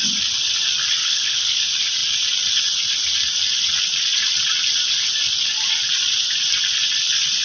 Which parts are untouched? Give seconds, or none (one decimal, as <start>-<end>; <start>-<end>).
0.0-1.0; 1.6-7.4